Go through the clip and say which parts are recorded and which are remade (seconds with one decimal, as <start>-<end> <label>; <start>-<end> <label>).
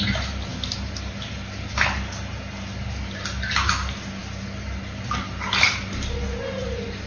0.0-7.1 recorded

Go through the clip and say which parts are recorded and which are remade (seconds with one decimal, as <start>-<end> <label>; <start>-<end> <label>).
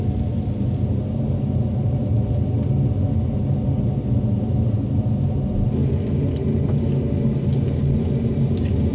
0.0-8.9 recorded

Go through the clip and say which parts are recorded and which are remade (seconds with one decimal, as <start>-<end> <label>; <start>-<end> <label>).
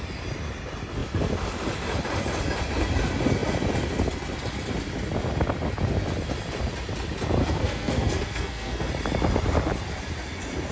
0.0-7.4 recorded; 7.4-8.9 remade; 8.9-10.7 recorded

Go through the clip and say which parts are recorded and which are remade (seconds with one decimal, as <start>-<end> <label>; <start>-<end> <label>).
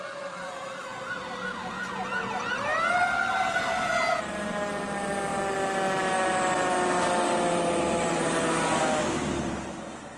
0.0-10.2 recorded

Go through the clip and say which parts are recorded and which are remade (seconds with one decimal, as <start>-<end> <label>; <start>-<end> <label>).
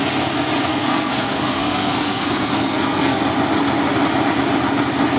0.0-0.7 recorded; 0.7-3.2 remade; 3.2-5.2 recorded